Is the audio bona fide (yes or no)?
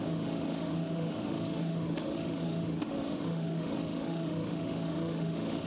no